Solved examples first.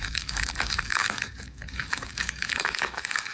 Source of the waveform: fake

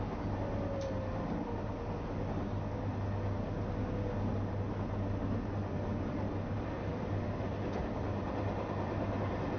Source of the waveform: real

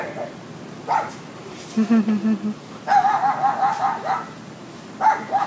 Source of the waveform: real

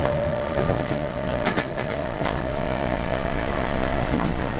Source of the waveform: fake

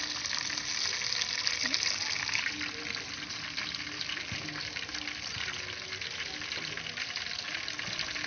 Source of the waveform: real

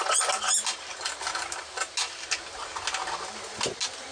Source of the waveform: real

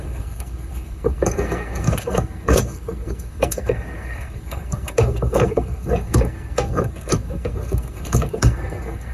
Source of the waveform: fake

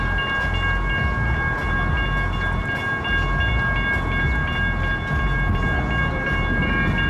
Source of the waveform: real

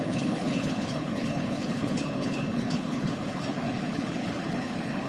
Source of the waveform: fake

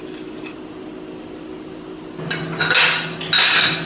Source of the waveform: real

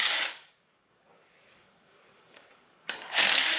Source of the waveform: fake